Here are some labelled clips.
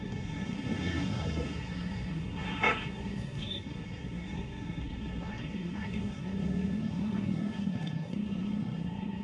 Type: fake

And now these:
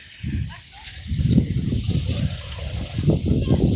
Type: real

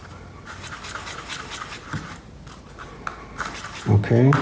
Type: real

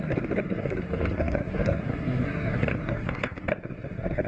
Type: fake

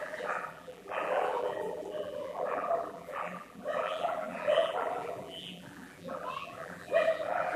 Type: fake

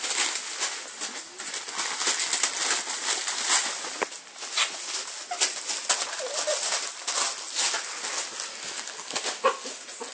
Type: real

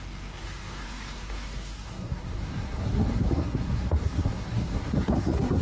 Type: fake